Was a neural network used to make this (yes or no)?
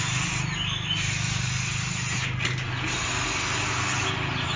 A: no